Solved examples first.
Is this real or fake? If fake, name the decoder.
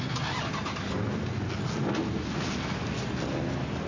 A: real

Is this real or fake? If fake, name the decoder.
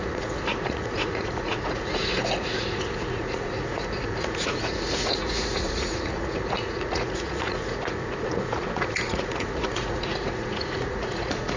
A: fake, vocoder, Vocos